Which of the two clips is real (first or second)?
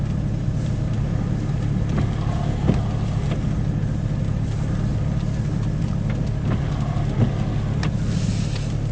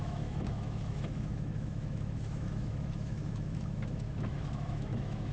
first